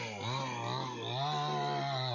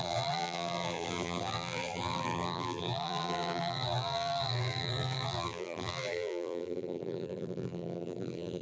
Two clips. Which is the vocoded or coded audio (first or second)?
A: second